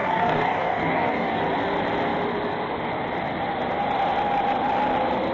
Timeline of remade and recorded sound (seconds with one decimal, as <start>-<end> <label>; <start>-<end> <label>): 0.0-1.4 remade; 1.4-5.3 recorded